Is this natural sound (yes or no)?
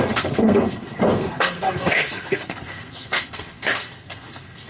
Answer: no